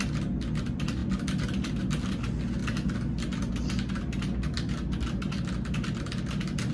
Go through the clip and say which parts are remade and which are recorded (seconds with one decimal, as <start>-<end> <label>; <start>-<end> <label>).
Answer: 0.0-6.7 recorded